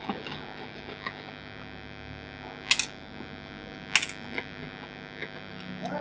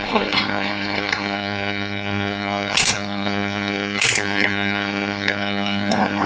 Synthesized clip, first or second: second